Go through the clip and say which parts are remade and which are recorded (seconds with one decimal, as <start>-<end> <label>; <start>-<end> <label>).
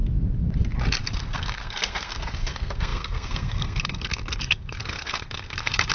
0.0-1.0 recorded; 1.0-5.9 remade